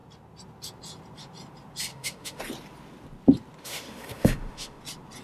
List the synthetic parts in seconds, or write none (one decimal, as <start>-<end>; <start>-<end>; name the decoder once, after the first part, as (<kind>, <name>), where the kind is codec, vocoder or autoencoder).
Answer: 1.9-2.4 (autoencoder, DAC-VAE); 3.6-4.8